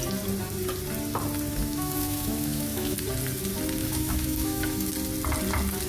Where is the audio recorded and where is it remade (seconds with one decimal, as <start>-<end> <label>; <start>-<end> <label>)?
0.0-1.5 recorded; 1.5-3.0 remade; 3.0-3.8 recorded; 3.8-4.9 remade; 4.9-5.9 recorded

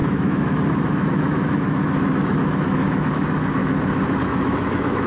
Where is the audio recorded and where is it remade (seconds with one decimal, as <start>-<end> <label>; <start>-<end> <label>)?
0.0-3.6 remade; 3.6-4.2 recorded; 4.2-5.1 remade

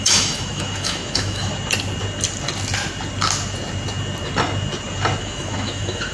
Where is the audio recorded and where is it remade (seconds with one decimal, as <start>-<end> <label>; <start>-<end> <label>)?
0.0-1.5 remade; 1.5-5.2 recorded; 5.2-6.1 remade